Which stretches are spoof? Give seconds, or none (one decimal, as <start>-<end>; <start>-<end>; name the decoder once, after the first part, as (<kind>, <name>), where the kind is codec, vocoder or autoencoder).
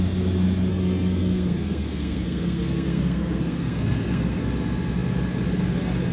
0.7-4.4 (codec, SNAC)